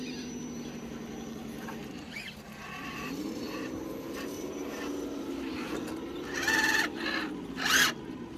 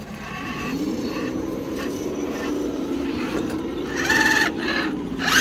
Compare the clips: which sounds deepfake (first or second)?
second